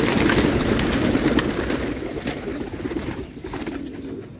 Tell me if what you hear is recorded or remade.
recorded